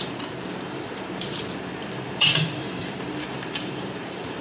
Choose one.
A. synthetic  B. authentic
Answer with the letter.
A